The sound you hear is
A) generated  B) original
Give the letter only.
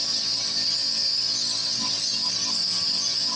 B